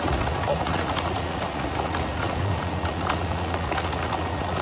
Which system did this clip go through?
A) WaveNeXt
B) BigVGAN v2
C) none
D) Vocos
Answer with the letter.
D